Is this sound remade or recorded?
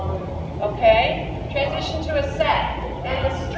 recorded